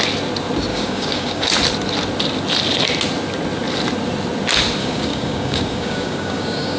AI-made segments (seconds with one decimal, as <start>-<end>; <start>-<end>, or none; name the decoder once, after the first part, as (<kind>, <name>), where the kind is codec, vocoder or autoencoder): 0.7-1.5 (codec, DAC); 4.8-6.8